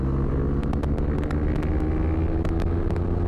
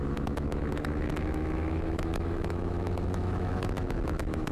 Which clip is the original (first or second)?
first